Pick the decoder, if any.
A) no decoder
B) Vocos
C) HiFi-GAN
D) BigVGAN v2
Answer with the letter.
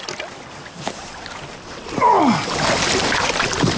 A